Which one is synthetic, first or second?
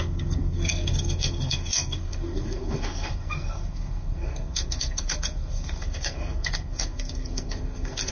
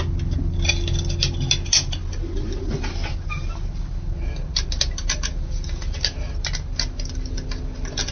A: first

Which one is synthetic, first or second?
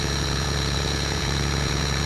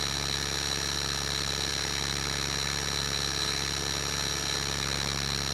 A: first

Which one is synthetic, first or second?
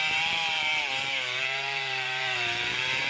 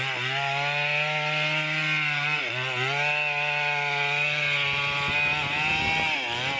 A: first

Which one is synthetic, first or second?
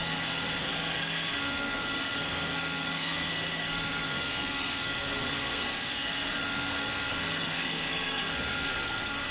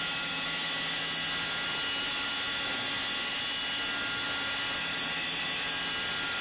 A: first